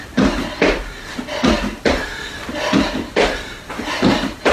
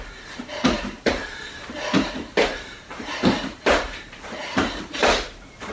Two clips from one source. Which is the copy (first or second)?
second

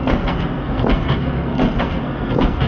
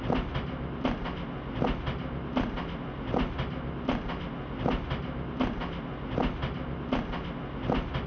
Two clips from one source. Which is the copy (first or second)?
first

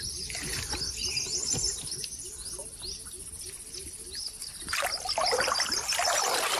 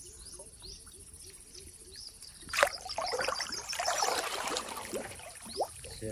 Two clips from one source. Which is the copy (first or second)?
second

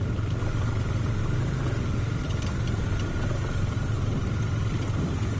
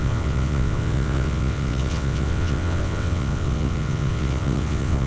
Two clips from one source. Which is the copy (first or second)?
second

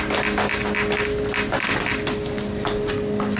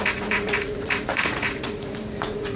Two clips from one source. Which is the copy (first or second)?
second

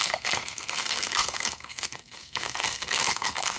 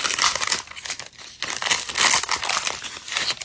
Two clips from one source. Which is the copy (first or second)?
first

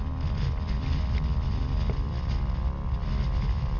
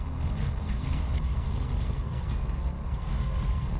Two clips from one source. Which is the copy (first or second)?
second